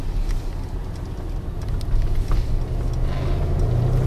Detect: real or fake real